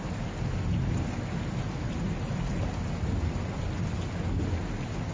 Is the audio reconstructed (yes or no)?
no